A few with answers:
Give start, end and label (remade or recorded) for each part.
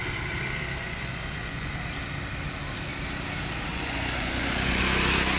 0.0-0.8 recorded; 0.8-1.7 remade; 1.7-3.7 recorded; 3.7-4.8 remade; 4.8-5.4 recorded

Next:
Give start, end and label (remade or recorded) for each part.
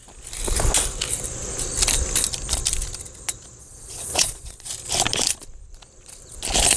0.0-3.6 recorded; 3.6-4.7 remade; 4.7-6.8 recorded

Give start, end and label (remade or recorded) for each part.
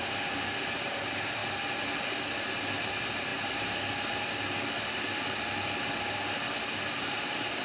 0.0-1.4 remade; 1.4-2.9 recorded; 2.9-3.3 remade; 3.3-6.9 recorded; 6.9-7.6 remade